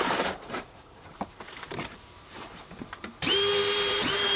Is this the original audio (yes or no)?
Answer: no